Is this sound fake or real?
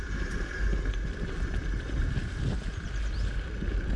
real